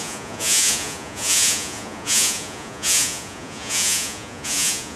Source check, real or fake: fake